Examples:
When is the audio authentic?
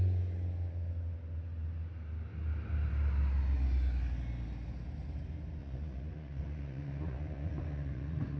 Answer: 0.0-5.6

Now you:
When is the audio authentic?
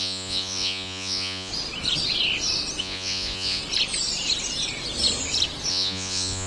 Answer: 1.5-2.8; 3.6-5.7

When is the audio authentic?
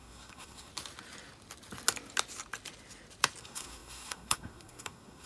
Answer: 0.7-3.4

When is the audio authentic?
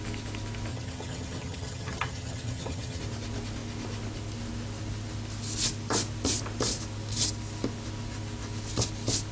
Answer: 0.0-0.7; 3.0-9.3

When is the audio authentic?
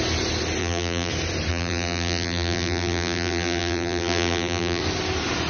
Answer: 0.0-0.6; 1.1-1.5; 4.8-5.5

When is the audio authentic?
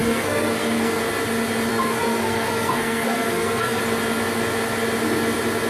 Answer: 1.0-1.7; 3.8-5.7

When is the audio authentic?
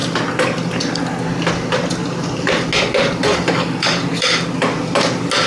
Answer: 0.0-3.2; 4.6-5.5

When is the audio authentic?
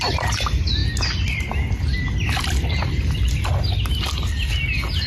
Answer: 0.0-5.1